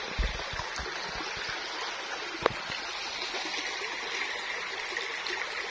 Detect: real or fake real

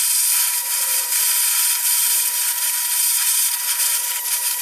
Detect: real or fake fake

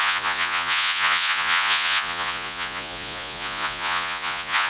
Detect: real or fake fake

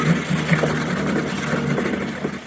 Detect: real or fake real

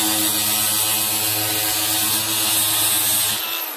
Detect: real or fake real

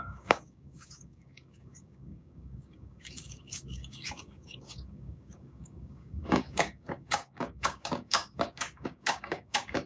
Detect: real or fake fake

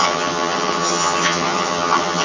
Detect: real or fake fake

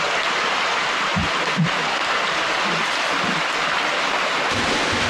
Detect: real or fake fake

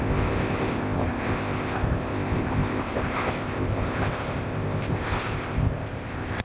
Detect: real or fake fake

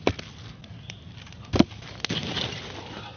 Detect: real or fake real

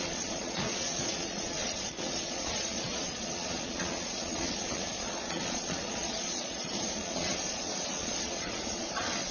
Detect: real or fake fake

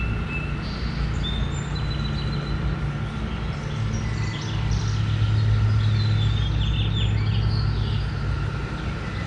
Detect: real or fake real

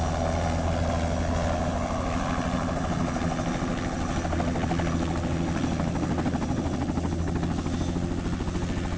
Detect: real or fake real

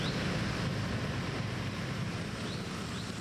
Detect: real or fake real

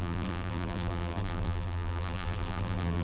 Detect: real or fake fake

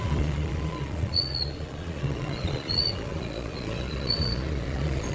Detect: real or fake fake